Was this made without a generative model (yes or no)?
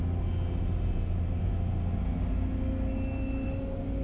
yes